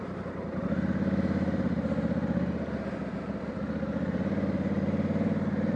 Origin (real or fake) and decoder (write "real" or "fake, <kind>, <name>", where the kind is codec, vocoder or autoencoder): real